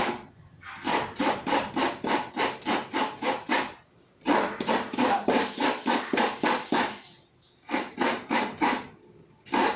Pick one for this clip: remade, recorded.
remade